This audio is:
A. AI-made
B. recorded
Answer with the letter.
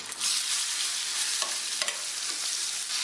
B